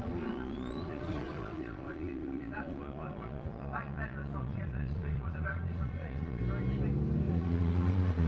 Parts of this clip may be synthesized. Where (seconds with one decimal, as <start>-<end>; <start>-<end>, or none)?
0.0-6.4; 7.3-8.3